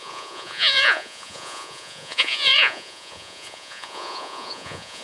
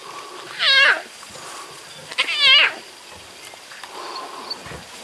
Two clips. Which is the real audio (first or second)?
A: second